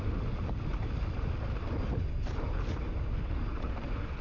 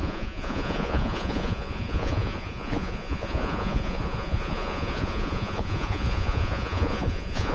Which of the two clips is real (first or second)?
first